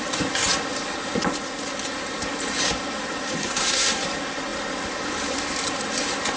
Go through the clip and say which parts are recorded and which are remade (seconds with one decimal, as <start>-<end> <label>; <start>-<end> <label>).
0.0-3.4 recorded; 3.4-4.0 remade; 4.0-6.4 recorded